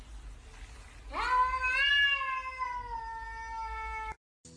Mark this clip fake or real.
real